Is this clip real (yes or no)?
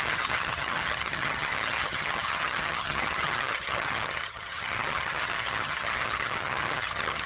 no